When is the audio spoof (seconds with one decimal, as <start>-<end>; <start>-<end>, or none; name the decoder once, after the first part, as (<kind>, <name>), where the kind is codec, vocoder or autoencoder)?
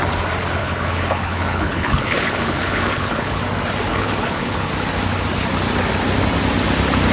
0.6-3.4 (codec, HILCodec); 3.9-4.7